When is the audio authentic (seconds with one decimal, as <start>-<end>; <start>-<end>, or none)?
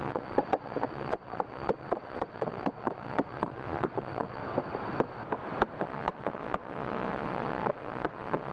4.4-5.8